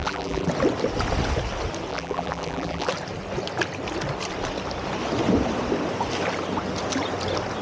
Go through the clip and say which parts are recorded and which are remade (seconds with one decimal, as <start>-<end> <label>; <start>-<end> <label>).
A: 0.0-0.5 remade; 0.5-1.9 recorded; 1.9-2.9 remade; 2.9-7.6 recorded